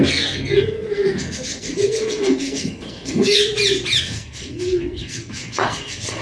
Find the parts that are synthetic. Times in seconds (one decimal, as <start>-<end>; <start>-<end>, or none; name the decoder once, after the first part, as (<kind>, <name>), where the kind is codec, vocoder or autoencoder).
0.0-3.4 (codec, SNAC); 4.0-6.2